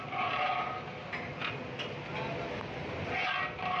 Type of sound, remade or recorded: recorded